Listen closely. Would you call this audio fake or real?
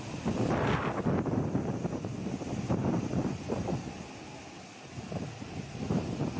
real